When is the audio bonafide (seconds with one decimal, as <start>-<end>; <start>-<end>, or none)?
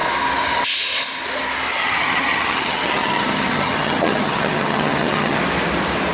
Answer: 0.0-1.7; 5.4-6.1